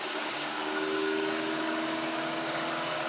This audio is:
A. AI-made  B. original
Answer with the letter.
A